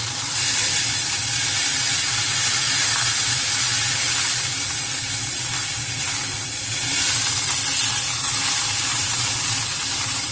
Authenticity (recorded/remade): remade